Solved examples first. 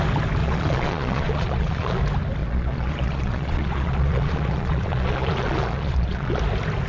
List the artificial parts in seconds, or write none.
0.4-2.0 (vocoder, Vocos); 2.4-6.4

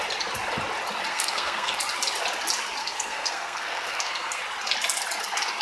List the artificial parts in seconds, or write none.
1.1-1.8 (codec, SNAC); 2.8-4.4